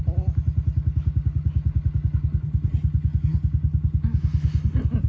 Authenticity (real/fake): real